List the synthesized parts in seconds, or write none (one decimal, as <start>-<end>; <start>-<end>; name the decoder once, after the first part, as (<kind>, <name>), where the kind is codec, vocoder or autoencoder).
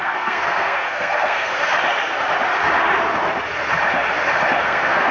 0.0-1.5 (codec, SNAC); 4.6-5.1